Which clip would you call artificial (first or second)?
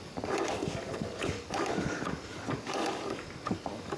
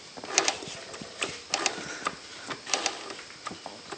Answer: first